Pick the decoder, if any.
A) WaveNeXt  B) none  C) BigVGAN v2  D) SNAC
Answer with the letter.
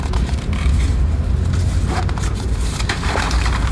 C